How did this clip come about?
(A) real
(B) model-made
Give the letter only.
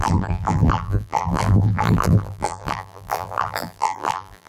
B